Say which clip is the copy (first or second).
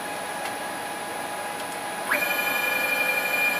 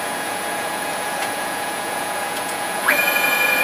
second